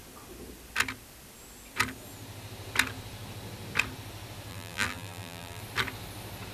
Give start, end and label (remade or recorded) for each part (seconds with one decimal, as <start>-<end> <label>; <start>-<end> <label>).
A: 0.0-4.5 recorded; 4.5-5.6 remade; 5.6-6.5 recorded